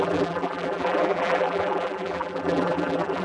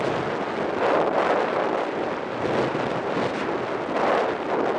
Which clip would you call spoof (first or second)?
first